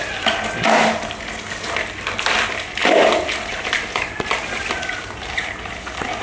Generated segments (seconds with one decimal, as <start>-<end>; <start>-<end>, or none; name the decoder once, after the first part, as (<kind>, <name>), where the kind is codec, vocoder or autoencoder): none